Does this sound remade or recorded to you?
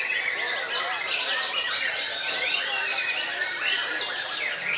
recorded